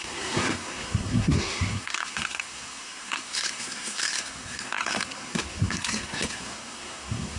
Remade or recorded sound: remade